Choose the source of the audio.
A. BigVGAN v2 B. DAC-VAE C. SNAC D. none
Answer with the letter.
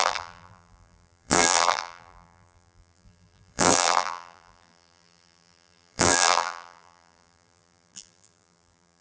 A